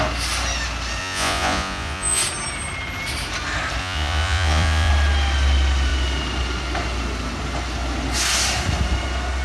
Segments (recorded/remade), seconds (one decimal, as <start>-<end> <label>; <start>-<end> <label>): 0.0-1.0 recorded; 1.0-2.2 remade; 2.2-3.8 recorded; 3.8-4.9 remade; 4.9-9.4 recorded